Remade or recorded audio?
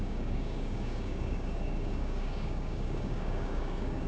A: remade